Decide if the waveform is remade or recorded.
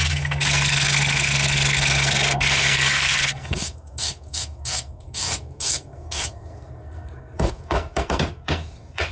remade